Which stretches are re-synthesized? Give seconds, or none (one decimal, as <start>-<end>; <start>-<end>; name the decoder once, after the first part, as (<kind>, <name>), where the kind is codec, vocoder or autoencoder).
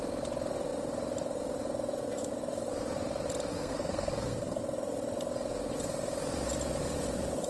3.5-4.6 (codec, SNAC)